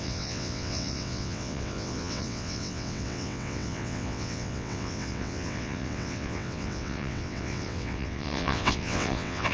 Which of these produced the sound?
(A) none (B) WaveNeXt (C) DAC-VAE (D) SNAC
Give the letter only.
B